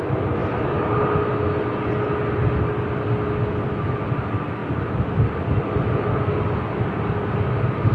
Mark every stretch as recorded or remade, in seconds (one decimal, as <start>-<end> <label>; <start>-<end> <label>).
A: 0.0-7.9 recorded